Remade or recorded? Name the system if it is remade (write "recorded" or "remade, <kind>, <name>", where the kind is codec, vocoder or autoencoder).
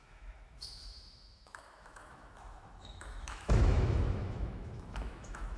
remade, autoencoder, DAC-VAE